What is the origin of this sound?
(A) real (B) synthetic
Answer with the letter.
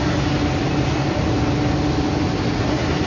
A